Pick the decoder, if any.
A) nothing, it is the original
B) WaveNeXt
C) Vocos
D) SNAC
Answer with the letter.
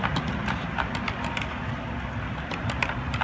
A